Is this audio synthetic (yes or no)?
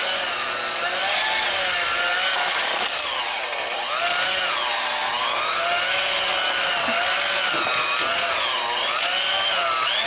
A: no